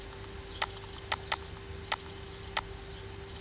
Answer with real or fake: real